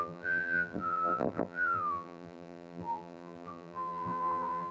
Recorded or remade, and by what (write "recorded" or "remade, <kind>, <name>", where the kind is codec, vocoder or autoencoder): remade, vocoder, BigVGAN v2